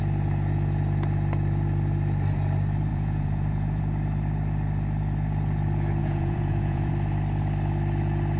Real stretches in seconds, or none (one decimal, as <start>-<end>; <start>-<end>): 0.0-2.9; 3.8-6.0; 6.9-8.4